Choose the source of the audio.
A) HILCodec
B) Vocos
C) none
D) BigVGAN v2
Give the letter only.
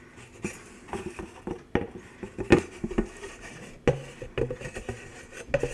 C